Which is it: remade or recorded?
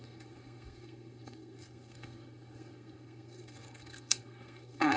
remade